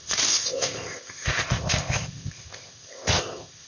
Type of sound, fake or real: fake